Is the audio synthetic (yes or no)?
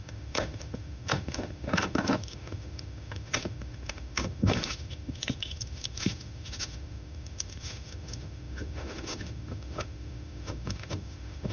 yes